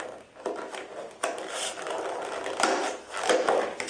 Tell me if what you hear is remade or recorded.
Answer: recorded